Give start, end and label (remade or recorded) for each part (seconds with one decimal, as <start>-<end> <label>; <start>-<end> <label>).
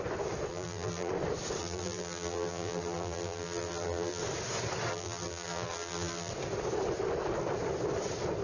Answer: 0.0-0.5 recorded; 0.5-1.1 remade; 1.1-1.6 recorded; 1.6-4.2 remade; 4.2-4.9 recorded; 4.9-6.3 remade; 6.3-8.4 recorded